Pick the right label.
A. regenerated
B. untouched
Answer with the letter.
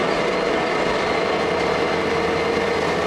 B